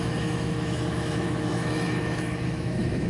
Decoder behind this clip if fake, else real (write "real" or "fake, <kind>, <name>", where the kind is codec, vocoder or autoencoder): fake, autoencoder, DAC-VAE